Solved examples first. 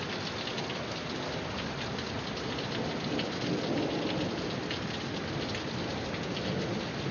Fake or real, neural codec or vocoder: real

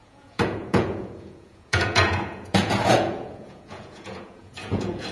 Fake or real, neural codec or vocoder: fake, vocoder, Vocos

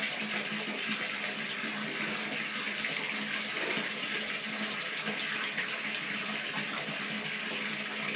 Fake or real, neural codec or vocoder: real